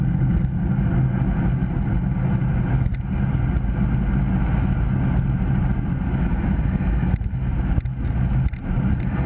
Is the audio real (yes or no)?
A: yes